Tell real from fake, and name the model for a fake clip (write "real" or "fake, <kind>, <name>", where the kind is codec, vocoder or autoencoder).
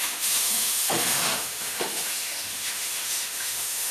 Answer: fake, autoencoder, DAC-VAE